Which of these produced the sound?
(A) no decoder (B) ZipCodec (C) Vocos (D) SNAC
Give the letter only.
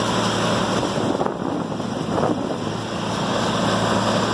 A